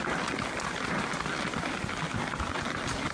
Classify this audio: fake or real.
fake